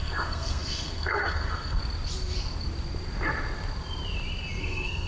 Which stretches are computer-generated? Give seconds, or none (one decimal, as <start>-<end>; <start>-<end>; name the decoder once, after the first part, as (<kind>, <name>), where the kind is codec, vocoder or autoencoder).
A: 0.0-1.8 (codec, SNAC); 4.6-5.1

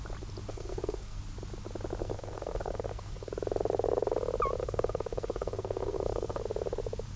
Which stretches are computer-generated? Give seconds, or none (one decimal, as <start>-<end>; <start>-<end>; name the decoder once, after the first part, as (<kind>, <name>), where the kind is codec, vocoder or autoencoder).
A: 0.5-1.2 (codec, SNAC); 2.0-3.3; 4.6-6.4

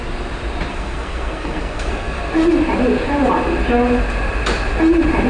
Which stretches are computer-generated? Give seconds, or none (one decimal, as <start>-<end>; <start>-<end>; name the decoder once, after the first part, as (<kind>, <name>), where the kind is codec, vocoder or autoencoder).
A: 0.7-2.2 (codec, SNAC)

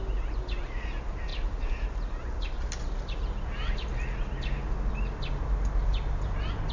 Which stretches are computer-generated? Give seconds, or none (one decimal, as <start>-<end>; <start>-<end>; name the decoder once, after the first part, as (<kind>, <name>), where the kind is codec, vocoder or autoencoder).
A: none

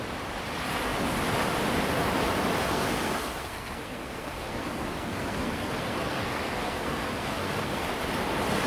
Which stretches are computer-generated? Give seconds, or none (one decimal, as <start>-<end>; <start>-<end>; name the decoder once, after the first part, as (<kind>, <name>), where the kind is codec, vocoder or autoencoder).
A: 2.7-7.9 (codec, SNAC)

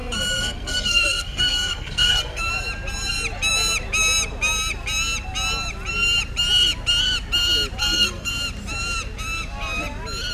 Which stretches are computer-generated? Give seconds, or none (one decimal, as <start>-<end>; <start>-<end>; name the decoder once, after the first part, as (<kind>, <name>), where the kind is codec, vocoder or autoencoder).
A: 0.0-2.5 (codec, SNAC); 7.8-8.3

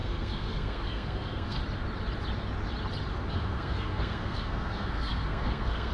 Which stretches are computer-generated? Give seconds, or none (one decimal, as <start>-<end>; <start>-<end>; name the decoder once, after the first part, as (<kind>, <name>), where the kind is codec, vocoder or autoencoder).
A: 0.0-1.6 (codec, SNAC); 3.3-5.9

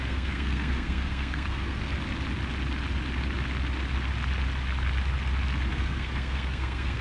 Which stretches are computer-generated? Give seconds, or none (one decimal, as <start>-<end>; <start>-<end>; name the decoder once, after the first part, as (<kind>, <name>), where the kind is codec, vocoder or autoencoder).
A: 0.0-1.8 (codec, SNAC); 5.7-7.0